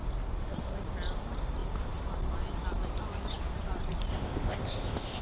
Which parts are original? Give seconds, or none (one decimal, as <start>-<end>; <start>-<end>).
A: 0.0-4.1